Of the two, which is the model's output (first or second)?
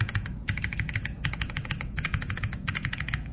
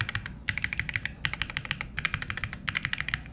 first